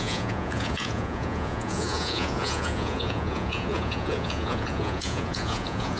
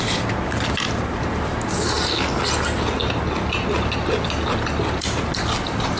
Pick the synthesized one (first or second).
first